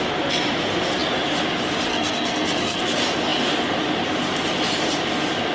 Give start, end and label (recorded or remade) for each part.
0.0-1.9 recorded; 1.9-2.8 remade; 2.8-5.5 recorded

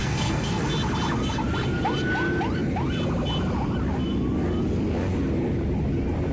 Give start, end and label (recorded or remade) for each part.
0.0-0.6 remade; 0.6-6.3 recorded

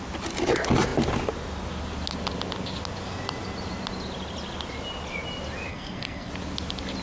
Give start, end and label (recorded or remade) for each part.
0.0-5.7 recorded; 5.7-6.3 remade; 6.3-7.0 recorded

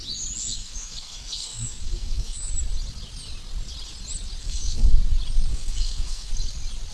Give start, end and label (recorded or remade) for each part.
0.0-0.4 recorded; 0.4-2.5 remade; 2.5-4.4 recorded; 4.4-4.9 remade; 4.9-5.5 recorded; 5.5-6.3 remade; 6.3-6.9 recorded

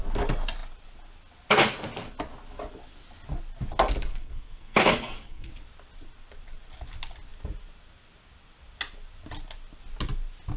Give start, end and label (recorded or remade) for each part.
0.0-4.1 recorded; 4.1-5.5 remade; 5.5-10.6 recorded

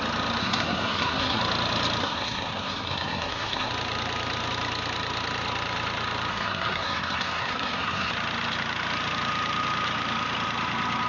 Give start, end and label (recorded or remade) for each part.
0.0-0.4 recorded; 0.4-1.4 remade; 1.4-2.0 recorded; 2.0-3.7 remade; 3.7-6.3 recorded; 6.3-8.1 remade; 8.1-11.1 recorded

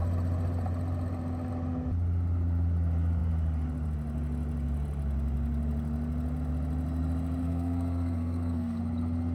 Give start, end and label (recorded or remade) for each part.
0.0-7.4 recorded; 7.4-8.8 remade; 8.8-9.3 recorded

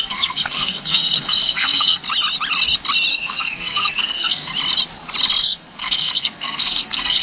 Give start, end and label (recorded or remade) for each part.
0.0-2.0 remade; 2.0-3.1 recorded; 3.1-4.5 remade; 4.5-5.4 recorded; 5.4-7.2 remade